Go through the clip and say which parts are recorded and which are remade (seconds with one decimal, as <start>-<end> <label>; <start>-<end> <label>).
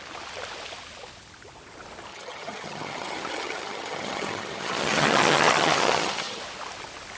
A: 0.0-2.1 recorded; 2.1-6.4 remade; 6.4-7.2 recorded